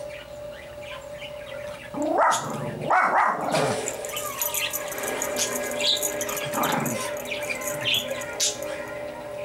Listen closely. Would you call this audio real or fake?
real